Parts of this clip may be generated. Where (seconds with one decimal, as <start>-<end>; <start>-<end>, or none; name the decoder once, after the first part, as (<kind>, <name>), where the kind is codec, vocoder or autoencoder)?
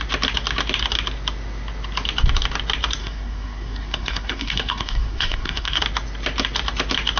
3.0-5.8 (codec, SNAC)